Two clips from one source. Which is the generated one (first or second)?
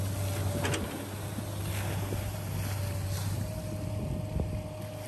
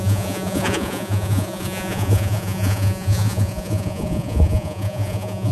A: second